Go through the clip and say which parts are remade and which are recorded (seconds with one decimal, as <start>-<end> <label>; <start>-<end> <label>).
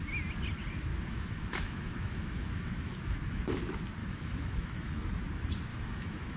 0.0-0.9 recorded; 0.9-3.4 remade; 3.4-4.0 recorded; 4.0-5.1 remade; 5.1-5.7 recorded; 5.7-6.4 remade